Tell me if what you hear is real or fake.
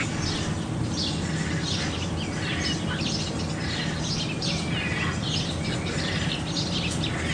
real